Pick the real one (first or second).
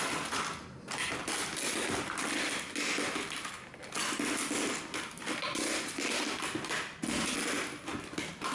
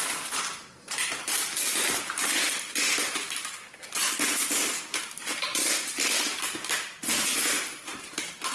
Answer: first